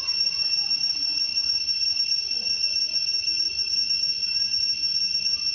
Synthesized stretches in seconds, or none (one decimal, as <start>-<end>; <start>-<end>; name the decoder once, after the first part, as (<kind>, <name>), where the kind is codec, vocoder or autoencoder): none